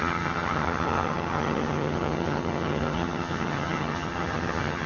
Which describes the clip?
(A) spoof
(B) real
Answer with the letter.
A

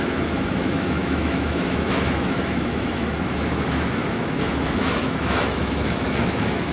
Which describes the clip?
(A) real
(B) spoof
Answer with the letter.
B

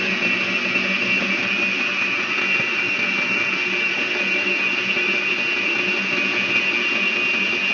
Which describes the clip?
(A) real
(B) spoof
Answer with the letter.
A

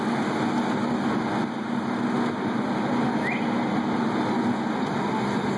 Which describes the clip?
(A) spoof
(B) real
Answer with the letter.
B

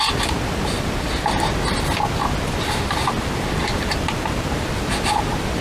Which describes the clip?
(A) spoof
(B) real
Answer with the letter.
B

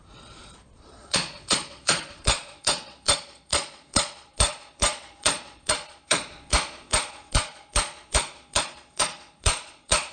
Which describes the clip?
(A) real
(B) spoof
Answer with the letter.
B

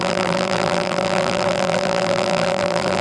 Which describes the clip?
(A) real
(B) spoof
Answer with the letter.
B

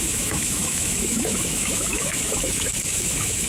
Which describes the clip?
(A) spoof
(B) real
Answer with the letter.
A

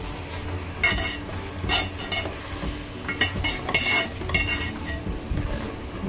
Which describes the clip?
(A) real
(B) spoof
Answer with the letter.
A